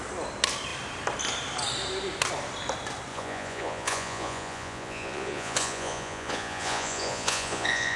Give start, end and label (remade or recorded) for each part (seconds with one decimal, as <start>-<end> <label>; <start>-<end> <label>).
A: 0.0-3.1 recorded; 3.1-8.0 remade